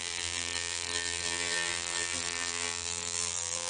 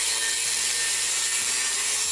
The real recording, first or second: second